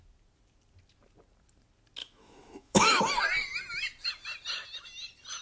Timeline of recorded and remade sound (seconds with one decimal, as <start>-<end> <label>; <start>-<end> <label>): 0.0-2.0 recorded; 2.0-3.0 remade; 3.0-5.4 recorded